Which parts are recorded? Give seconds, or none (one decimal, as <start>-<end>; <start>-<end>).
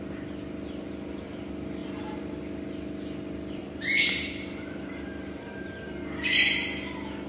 0.0-1.8; 2.4-3.6; 6.0-7.3